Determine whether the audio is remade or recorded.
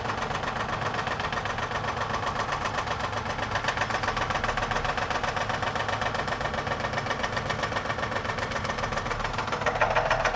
recorded